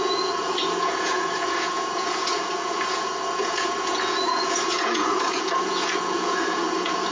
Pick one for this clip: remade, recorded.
remade